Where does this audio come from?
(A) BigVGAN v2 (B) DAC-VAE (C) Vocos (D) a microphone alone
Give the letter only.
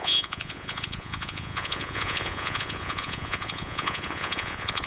C